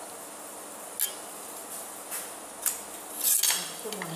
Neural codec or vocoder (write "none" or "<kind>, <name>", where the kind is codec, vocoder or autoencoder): none